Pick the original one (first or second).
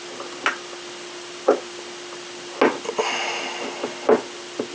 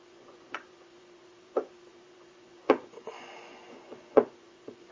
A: first